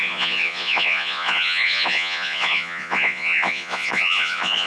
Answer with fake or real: fake